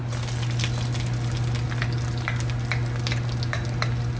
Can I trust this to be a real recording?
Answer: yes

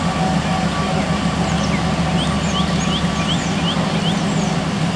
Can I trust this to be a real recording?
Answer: yes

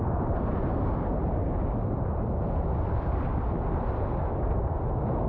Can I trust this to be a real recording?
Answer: yes